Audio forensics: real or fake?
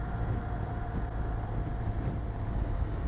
real